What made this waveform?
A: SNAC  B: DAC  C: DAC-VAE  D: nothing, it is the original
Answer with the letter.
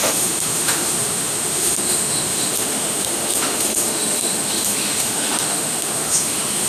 C